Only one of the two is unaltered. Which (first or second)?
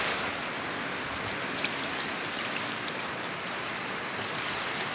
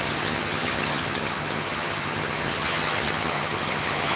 first